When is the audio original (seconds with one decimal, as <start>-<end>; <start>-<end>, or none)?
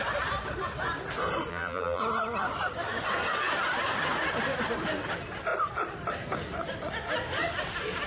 0.0-1.5; 2.0-8.1